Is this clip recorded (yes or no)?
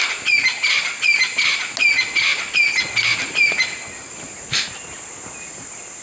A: yes